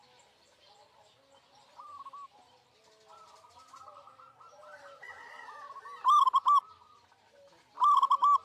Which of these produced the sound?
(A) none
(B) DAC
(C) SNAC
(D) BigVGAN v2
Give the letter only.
A